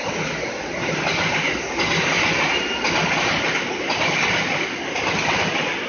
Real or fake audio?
real